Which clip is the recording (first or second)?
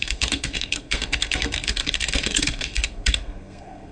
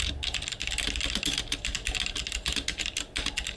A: second